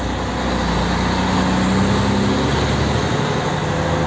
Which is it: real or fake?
real